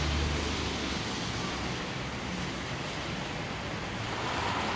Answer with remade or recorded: recorded